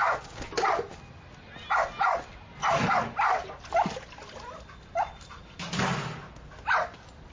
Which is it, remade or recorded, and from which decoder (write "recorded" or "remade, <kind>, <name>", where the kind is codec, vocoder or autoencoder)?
recorded